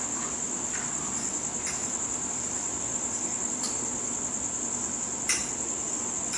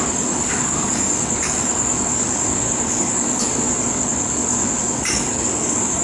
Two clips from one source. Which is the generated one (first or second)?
second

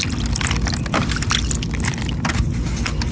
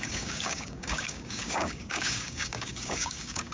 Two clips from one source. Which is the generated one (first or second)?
second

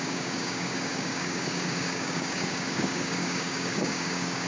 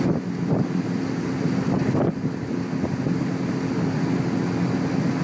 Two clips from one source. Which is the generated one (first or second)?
first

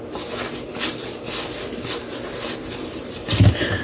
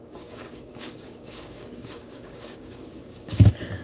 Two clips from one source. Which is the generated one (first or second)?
second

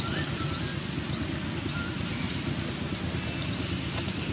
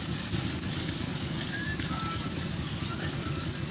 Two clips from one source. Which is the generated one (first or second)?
second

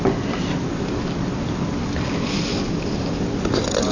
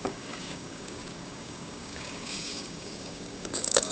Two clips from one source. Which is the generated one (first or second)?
second